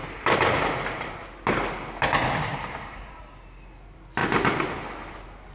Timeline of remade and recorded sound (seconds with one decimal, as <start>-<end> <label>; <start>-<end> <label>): 0.0-2.5 recorded; 2.5-3.2 remade; 3.2-5.5 recorded